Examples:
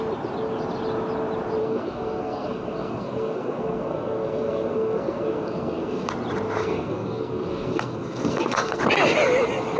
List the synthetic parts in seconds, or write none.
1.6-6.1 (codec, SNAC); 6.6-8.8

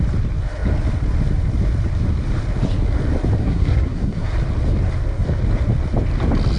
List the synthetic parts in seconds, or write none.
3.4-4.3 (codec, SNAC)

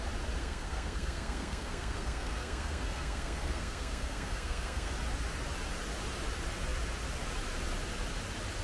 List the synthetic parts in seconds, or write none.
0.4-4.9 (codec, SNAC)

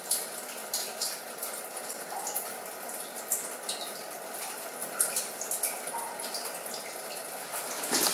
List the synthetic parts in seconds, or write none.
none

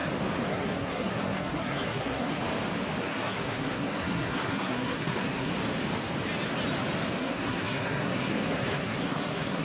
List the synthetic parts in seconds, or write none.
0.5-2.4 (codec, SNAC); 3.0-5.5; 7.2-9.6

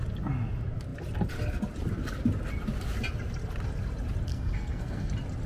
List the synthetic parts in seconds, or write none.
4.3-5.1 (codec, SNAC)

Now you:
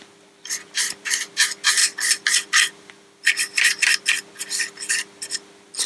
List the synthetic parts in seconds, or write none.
none

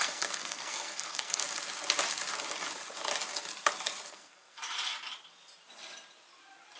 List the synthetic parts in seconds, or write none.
0.0-1.4 (codec, SNAC); 4.1-4.6